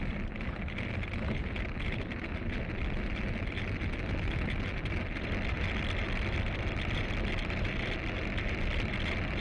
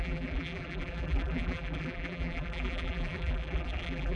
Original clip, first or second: first